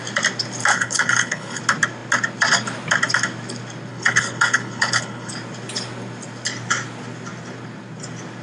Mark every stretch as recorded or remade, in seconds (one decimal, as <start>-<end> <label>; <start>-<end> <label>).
0.0-0.7 recorded; 0.7-1.6 remade; 1.6-3.9 recorded; 3.9-5.3 remade; 5.3-8.4 recorded